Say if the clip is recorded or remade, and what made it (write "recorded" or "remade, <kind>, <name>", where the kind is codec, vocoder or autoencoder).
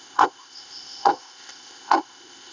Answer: remade, codec, ZipCodec